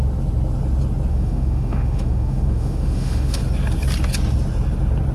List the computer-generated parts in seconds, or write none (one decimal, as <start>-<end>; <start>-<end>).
1.1-3.4